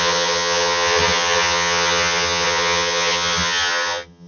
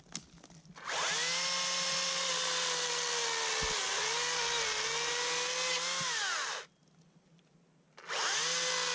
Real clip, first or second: second